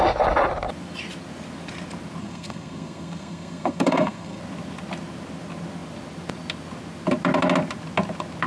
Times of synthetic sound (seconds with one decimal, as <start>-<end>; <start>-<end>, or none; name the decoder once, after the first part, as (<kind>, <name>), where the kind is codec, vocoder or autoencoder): 2.2-4.4 (codec, SNAC)